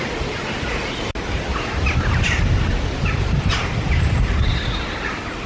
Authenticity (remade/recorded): recorded